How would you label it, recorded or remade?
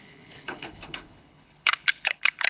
remade